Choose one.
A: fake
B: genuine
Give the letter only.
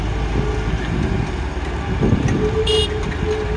B